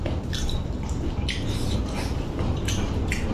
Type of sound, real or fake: fake